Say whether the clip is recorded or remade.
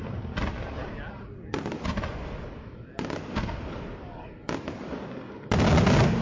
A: recorded